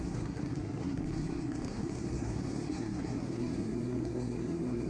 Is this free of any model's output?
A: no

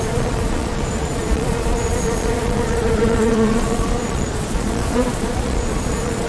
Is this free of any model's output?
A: no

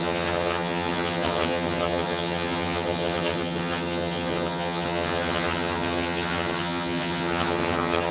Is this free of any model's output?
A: no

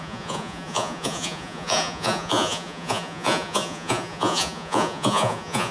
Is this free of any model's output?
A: no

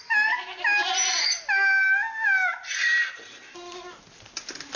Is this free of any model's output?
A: yes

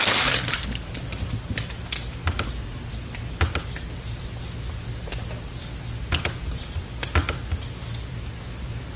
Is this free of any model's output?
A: yes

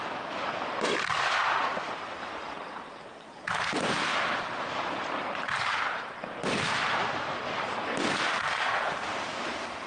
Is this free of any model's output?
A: no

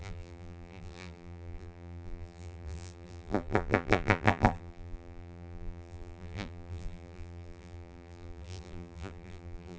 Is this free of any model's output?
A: no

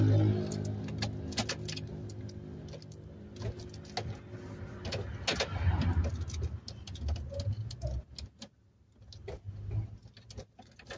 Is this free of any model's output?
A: yes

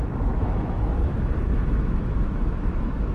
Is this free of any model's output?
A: no